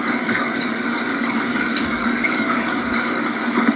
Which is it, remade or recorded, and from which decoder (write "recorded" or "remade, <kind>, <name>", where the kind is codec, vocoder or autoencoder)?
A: remade, codec, DAC